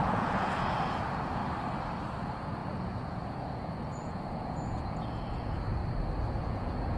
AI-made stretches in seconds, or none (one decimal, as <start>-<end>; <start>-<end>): 0.0-1.4; 2.2-5.8; 6.4-7.0